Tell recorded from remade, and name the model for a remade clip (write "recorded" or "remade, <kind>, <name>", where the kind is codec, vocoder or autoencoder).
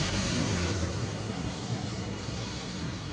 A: remade, codec, SNAC